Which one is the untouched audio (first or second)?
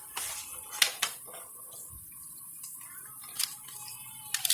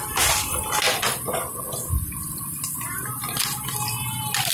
second